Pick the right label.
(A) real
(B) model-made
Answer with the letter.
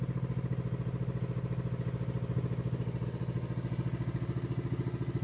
A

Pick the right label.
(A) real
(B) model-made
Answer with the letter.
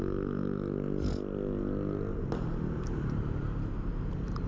A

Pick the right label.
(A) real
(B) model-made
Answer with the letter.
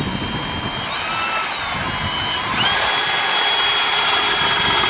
A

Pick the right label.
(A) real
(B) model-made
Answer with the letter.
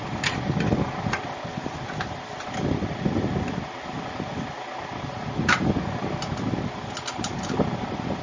A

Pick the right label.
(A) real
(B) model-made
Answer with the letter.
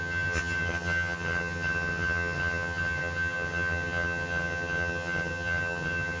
B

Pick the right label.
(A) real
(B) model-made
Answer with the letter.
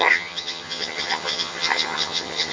B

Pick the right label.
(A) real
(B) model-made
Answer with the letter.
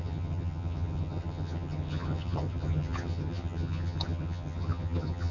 B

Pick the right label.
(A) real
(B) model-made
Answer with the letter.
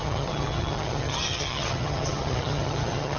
B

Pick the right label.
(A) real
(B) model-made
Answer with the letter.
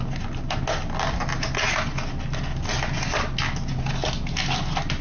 A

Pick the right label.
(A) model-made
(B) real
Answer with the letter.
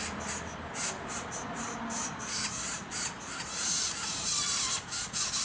B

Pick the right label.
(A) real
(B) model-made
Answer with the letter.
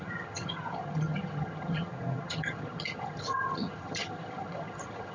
B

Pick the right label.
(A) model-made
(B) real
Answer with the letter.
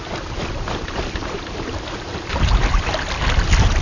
B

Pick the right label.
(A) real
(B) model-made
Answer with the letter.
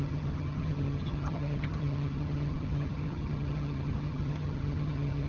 B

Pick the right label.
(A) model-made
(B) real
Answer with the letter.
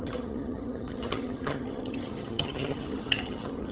A